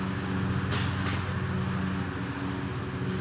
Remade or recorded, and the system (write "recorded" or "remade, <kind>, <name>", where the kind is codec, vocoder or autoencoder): recorded